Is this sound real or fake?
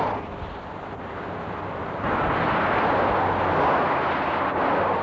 real